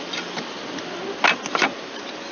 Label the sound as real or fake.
real